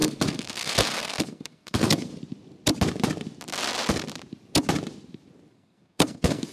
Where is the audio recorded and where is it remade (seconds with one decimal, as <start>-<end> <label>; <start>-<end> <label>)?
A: 0.0-2.1 remade; 2.1-5.5 recorded; 5.5-6.5 remade